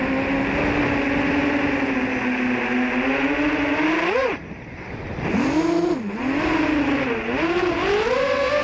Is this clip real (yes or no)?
yes